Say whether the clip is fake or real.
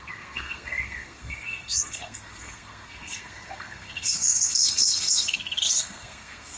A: fake